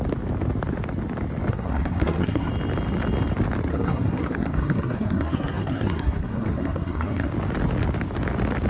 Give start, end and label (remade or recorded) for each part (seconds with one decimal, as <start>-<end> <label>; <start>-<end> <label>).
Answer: 0.0-1.5 recorded; 1.5-2.5 remade; 2.5-3.7 recorded; 3.7-7.3 remade; 7.3-8.7 recorded